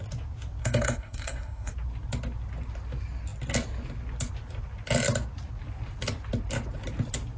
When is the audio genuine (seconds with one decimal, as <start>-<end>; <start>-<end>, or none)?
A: 0.0-0.6; 1.7-7.4